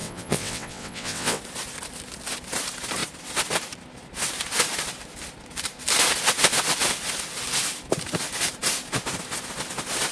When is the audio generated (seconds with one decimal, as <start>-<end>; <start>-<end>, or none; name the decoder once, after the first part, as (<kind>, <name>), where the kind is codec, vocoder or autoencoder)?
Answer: 0.0-1.4 (vocoder, WaveNeXt)